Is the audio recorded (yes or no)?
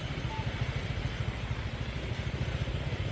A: yes